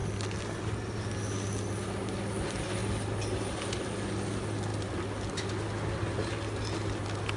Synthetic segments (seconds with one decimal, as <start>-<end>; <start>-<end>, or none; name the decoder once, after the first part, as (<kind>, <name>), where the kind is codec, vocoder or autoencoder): none